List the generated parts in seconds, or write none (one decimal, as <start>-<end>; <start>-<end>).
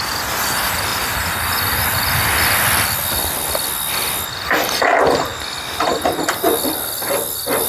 none